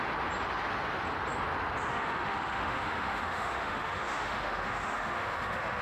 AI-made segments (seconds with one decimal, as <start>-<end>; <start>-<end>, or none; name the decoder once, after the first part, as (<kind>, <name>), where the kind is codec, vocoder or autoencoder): 1.9-5.8 (autoencoder, DAC-VAE)